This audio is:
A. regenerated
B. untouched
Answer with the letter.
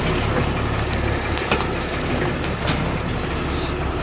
B